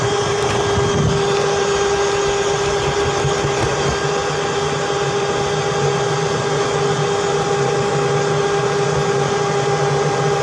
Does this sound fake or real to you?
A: real